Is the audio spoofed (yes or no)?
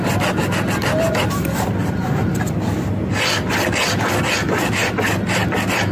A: no